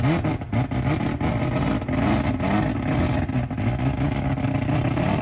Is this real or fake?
real